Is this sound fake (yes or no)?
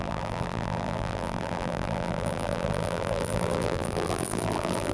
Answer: yes